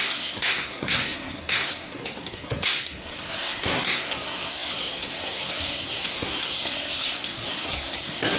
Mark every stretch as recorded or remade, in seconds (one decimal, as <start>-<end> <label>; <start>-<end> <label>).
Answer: 0.0-8.4 remade